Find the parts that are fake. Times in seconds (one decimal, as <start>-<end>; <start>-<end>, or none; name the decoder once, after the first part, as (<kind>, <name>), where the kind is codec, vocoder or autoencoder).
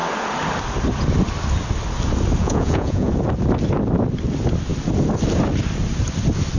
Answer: 2.4-3.1 (vocoder, Vocos)